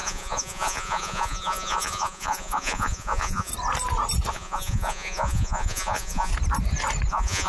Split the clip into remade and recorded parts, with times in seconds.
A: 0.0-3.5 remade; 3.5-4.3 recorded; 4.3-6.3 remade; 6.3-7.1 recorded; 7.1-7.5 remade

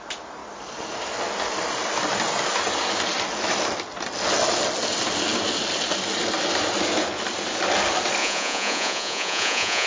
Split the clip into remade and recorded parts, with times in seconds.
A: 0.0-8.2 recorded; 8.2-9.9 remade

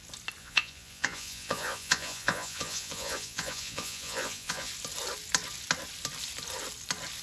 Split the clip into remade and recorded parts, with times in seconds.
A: 0.0-0.4 recorded; 0.4-4.7 remade; 4.7-7.2 recorded

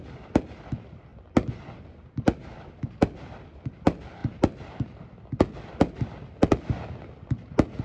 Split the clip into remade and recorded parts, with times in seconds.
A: 0.0-7.8 recorded

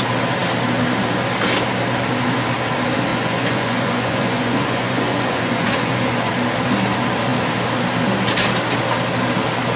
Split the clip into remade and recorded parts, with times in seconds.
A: 0.0-3.1 recorded; 3.1-6.3 remade; 6.3-9.8 recorded